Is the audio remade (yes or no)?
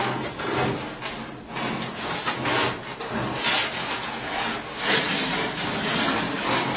no